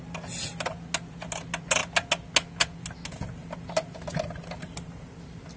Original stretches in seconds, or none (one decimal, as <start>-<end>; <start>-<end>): 0.0-5.6